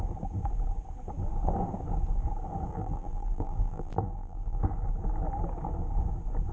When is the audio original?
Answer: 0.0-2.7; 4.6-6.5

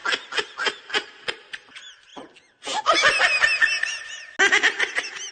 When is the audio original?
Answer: 0.0-5.3

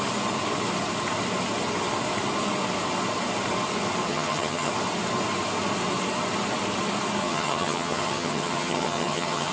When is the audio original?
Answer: 0.0-4.1; 4.7-7.2

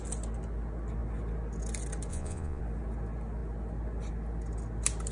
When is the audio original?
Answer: 0.0-2.1; 2.6-5.1